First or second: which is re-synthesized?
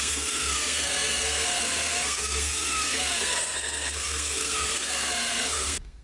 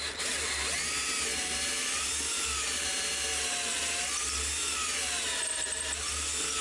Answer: first